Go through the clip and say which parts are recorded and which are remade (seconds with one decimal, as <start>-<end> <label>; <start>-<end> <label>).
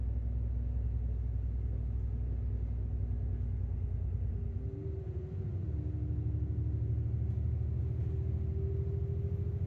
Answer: 0.0-9.7 recorded